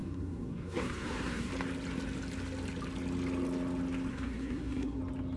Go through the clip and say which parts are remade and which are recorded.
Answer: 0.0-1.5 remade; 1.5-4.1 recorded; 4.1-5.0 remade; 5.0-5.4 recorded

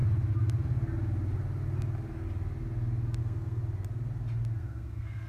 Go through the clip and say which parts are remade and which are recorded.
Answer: 0.0-3.2 recorded; 3.2-3.6 remade; 3.6-4.6 recorded; 4.6-5.3 remade

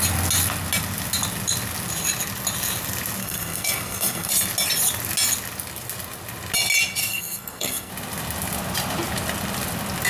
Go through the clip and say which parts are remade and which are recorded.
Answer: 0.0-3.2 recorded; 3.2-4.3 remade; 4.3-7.0 recorded; 7.0-7.9 remade; 7.9-10.1 recorded

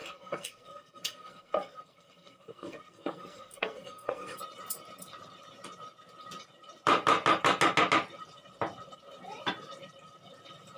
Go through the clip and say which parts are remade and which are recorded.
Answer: 0.0-4.4 remade; 4.4-10.8 recorded